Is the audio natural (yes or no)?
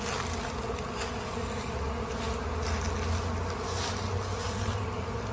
yes